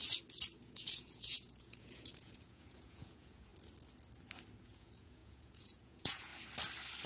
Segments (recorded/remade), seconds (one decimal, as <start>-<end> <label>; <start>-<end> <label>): 0.0-0.6 recorded; 0.6-3.5 remade; 3.5-4.6 recorded; 4.6-6.3 remade; 6.3-7.1 recorded